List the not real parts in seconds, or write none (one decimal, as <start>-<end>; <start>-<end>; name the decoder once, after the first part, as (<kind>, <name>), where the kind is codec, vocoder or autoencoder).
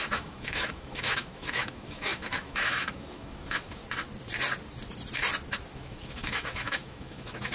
0.0-3.8 (autoencoder, DAC-VAE); 5.7-7.5